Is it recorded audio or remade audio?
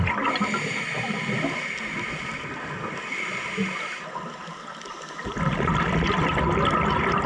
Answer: recorded